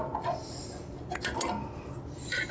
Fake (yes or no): no